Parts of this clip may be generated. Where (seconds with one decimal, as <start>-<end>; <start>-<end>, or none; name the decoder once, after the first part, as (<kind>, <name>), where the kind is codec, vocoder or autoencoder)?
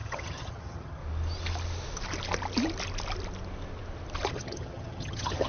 0.0-1.0 (vocoder, HiFi-GAN); 4.3-5.5